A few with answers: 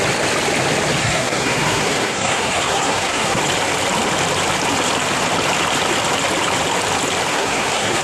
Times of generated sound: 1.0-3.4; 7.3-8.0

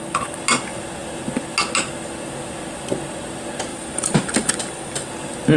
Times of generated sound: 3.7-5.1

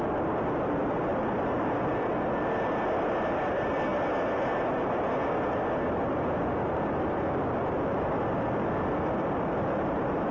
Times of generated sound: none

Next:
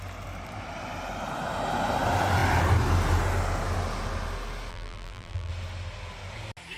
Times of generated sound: 4.7-5.5

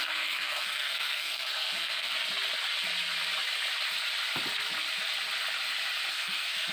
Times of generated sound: 0.0-2.1; 6.1-6.7

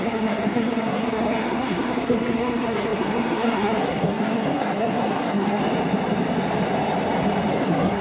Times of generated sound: 0.0-5.6; 7.5-8.0

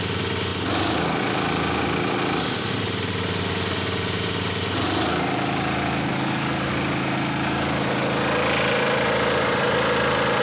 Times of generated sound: 6.1-6.7

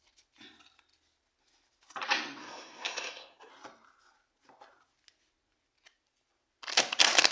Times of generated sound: 2.4-3.5